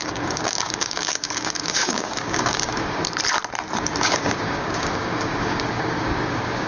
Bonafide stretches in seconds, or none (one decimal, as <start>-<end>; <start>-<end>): 3.0-4.0